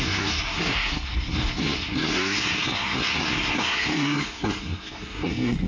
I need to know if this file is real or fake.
fake